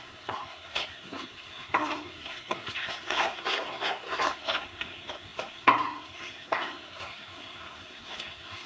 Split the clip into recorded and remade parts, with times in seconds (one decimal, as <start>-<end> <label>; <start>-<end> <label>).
0.0-8.7 remade

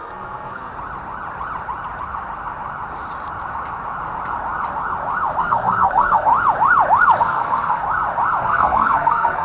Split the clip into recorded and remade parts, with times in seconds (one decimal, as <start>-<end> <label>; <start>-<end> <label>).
0.0-0.7 remade; 0.7-5.4 recorded; 5.4-6.3 remade; 6.3-7.2 recorded; 7.2-7.8 remade; 7.8-8.4 recorded; 8.4-9.4 remade

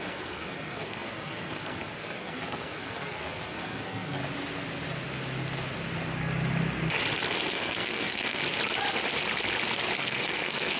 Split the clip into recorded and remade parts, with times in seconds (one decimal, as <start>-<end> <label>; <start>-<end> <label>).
0.0-4.2 remade; 4.2-7.5 recorded; 7.5-8.4 remade; 8.4-10.0 recorded; 10.0-10.8 remade

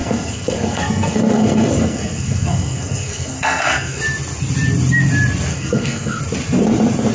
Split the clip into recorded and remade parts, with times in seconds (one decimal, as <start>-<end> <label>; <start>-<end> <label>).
0.0-4.0 remade; 4.0-5.5 recorded; 5.5-6.2 remade; 6.2-7.1 recorded

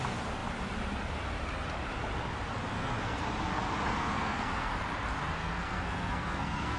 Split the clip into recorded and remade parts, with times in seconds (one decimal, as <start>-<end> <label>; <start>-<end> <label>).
0.0-2.7 recorded; 2.7-3.2 remade; 3.2-3.9 recorded; 3.9-4.7 remade; 4.7-5.4 recorded; 5.4-6.8 remade

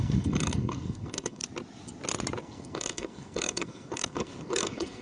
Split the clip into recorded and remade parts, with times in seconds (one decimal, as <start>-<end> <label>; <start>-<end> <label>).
0.0-1.4 remade; 1.4-2.4 recorded; 2.4-5.0 remade